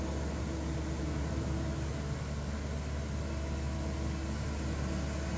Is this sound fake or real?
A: real